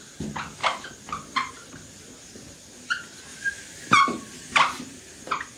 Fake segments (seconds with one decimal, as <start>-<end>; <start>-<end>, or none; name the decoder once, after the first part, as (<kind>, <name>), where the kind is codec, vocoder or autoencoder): none